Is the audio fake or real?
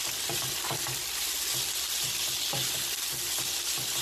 real